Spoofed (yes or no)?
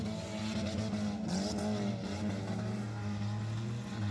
no